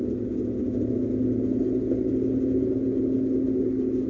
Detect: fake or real real